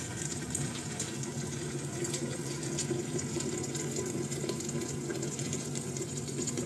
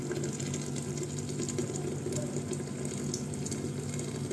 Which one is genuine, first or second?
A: second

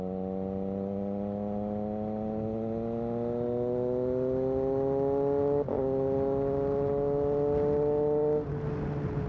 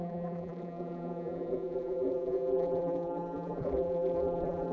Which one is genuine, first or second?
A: first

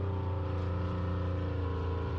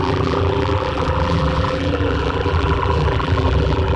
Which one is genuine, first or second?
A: first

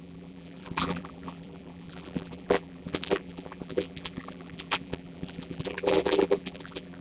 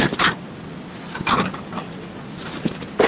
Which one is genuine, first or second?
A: second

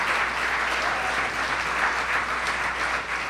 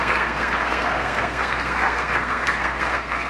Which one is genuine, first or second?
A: first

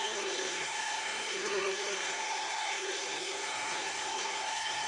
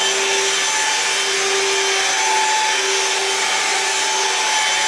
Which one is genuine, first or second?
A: second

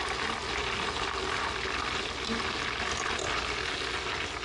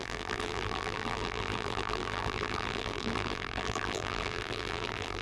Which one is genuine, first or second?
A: first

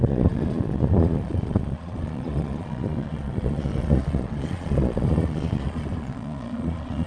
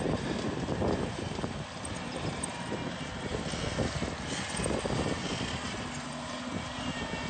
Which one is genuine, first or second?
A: second